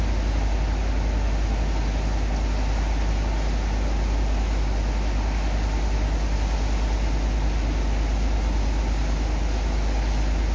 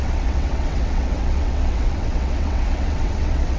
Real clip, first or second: first